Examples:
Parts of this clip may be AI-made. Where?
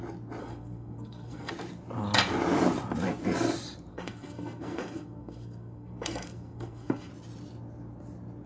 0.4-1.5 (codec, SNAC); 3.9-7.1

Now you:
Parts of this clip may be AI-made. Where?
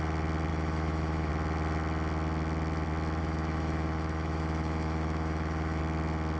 0.5-1.3 (autoencoder, DAC-VAE); 3.2-5.8